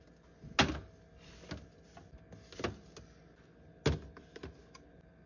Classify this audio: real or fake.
real